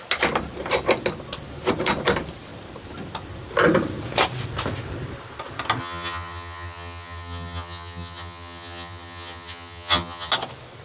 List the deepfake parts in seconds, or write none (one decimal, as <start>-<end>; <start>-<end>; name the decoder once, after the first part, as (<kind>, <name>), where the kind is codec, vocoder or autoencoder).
5.8-10.3 (vocoder, HiFi-GAN)